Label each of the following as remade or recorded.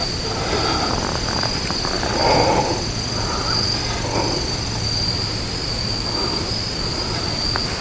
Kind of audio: recorded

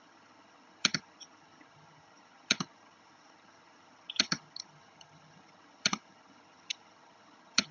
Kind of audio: remade